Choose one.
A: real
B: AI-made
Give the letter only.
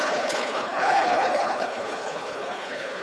B